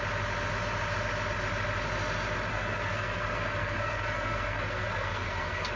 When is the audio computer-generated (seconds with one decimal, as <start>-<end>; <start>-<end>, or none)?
2.5-5.8